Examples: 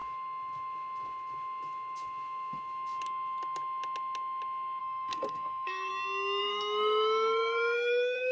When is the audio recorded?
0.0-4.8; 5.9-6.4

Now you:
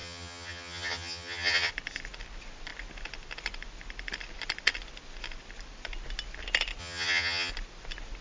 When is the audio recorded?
1.7-6.8; 7.5-8.2

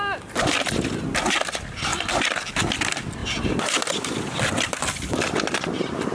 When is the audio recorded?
0.0-6.1

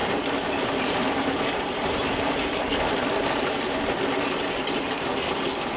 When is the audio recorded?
3.5-5.8

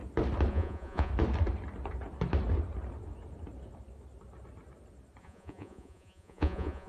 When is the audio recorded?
0.0-0.5; 1.1-5.2

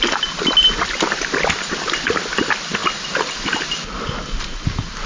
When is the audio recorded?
0.0-5.1

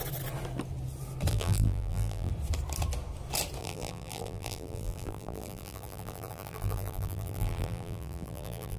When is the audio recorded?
0.0-1.3; 2.3-3.6

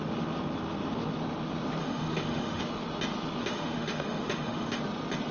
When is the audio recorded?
0.0-1.8; 2.6-3.4; 4.8-5.3